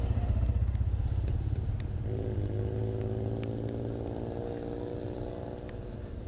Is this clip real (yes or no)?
yes